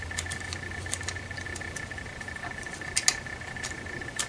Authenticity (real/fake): real